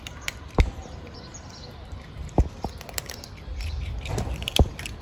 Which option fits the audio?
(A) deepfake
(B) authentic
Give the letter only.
A